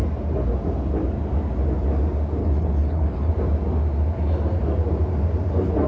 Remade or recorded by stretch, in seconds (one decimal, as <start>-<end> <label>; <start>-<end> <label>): 0.0-2.4 recorded; 2.4-3.3 remade; 3.3-5.9 recorded